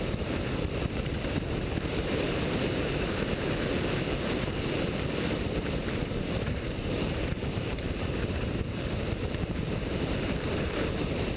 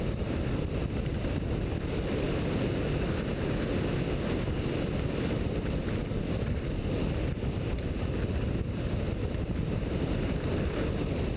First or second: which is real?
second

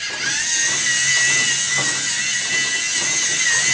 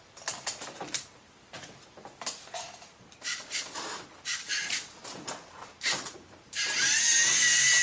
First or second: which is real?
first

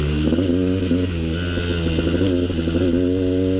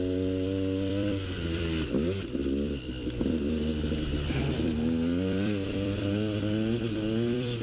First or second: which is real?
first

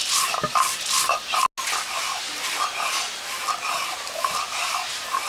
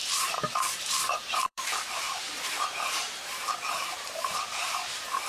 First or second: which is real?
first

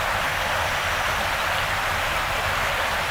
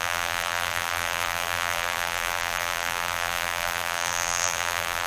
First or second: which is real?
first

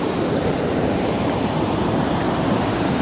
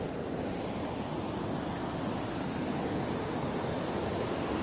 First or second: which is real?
second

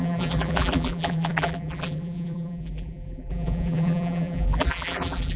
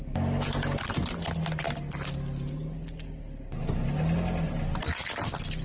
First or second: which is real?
second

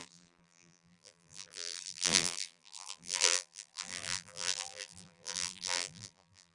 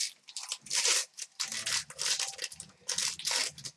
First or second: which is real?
second